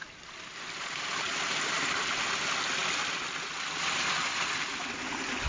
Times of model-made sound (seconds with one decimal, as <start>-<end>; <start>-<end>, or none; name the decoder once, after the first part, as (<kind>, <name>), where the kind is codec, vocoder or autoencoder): none